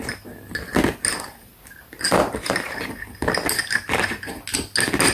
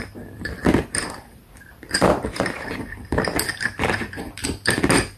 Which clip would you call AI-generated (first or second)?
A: second